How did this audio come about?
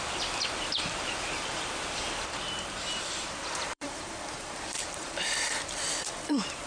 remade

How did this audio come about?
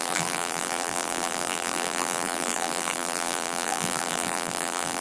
remade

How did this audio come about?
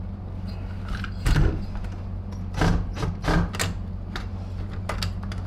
recorded